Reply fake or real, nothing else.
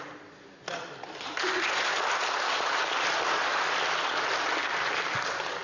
real